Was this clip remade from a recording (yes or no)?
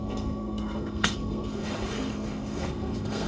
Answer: yes